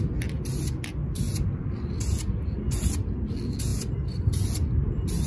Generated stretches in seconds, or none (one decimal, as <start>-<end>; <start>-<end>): 3.7-4.3